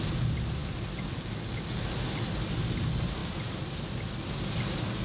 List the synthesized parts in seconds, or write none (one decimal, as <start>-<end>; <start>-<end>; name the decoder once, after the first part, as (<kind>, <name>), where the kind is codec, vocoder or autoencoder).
none